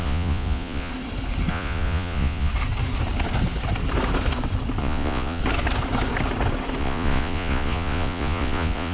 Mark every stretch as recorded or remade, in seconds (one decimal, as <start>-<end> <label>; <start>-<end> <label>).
0.0-0.9 remade; 0.9-1.5 recorded; 1.5-2.5 remade; 2.5-4.8 recorded; 4.8-5.4 remade; 5.4-6.8 recorded; 6.8-8.9 remade